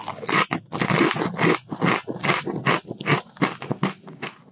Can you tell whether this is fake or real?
real